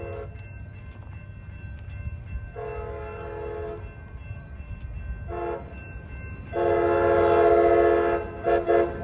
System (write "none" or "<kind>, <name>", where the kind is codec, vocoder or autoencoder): none